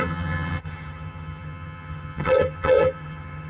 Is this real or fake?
fake